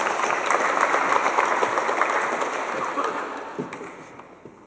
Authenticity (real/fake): real